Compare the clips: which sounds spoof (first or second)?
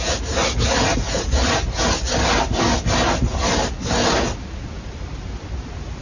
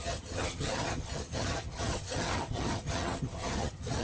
second